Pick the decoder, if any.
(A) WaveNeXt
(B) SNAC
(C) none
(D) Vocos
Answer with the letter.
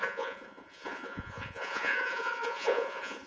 D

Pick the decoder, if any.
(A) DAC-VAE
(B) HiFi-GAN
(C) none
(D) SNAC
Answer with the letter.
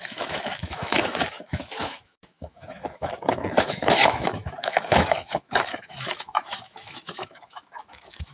A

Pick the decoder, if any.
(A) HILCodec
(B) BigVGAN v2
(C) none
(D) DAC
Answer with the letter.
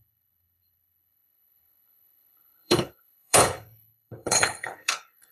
A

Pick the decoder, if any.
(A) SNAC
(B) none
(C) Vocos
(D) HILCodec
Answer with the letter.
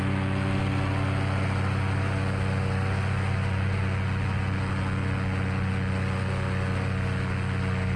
B